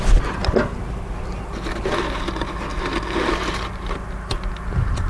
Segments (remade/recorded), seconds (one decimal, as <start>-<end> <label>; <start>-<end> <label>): 0.0-0.4 recorded; 0.4-1.2 remade; 1.2-5.1 recorded